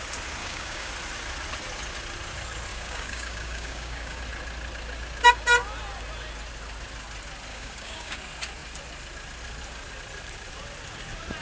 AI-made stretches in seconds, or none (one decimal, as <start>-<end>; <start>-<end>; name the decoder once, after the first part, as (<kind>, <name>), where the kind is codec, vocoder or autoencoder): 0.4-0.9 (codec, DAC); 2.7-4.2; 7.5-8.2